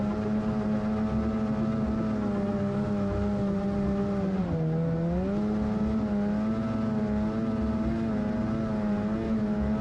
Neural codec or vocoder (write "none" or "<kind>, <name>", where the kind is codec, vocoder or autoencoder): none